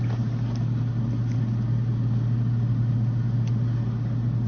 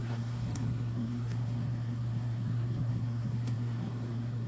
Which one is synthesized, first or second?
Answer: second